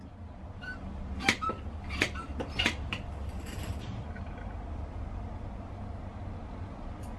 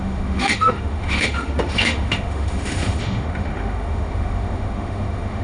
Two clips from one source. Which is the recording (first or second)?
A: first